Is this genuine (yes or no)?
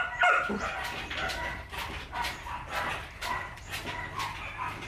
yes